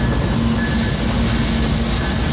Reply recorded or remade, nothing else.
recorded